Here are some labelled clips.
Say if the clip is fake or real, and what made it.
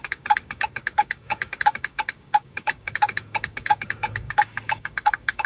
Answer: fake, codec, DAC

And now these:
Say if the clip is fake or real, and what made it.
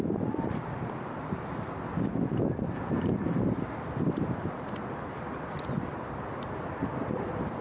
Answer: fake, vocoder, BigVGAN v2